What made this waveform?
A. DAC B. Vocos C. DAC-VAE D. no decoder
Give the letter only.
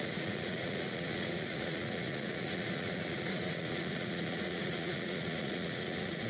B